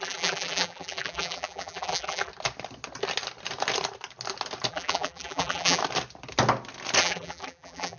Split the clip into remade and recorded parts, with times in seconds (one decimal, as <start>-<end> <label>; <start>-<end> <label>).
0.0-2.3 remade; 2.3-4.7 recorded; 4.7-5.8 remade; 5.8-7.0 recorded; 7.0-8.0 remade